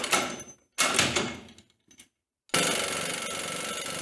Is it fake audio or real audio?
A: real